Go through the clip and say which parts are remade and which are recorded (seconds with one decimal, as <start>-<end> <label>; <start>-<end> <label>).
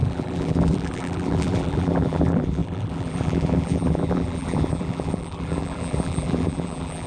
0.0-7.1 remade